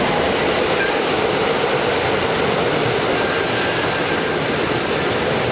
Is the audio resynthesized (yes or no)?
yes